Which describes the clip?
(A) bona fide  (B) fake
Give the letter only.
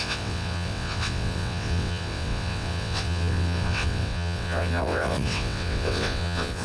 B